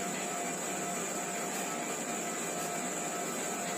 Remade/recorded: recorded